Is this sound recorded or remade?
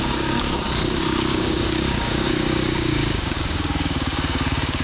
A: remade